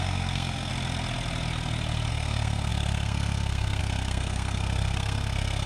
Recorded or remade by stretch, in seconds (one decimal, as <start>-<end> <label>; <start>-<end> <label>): 0.0-0.7 remade; 0.7-2.1 recorded; 2.1-5.7 remade